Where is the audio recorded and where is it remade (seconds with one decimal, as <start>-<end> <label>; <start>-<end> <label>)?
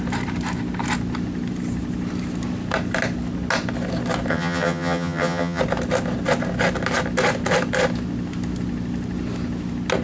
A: 0.0-4.3 recorded; 4.3-5.6 remade; 5.6-10.0 recorded